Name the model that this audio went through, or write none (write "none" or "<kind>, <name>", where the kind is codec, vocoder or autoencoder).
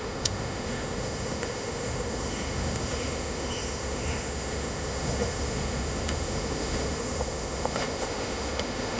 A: autoencoder, DAC-VAE